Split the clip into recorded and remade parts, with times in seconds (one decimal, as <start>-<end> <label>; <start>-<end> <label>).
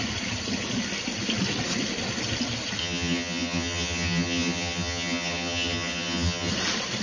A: 0.0-2.8 recorded; 2.8-6.5 remade; 6.5-7.0 recorded